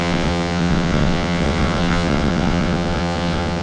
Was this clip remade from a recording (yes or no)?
yes